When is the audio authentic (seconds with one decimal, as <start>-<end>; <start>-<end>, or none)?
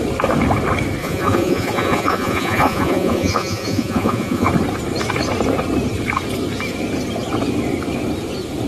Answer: 0.0-1.0; 4.5-8.7